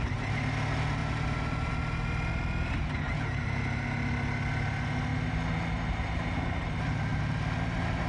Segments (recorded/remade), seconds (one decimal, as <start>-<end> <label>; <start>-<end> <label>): 0.0-8.1 recorded